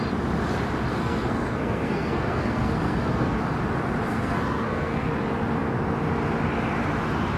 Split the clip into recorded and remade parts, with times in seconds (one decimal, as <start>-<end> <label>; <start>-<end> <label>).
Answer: 0.0-0.9 recorded; 0.9-3.4 remade; 3.4-4.1 recorded; 4.1-5.1 remade; 5.1-7.4 recorded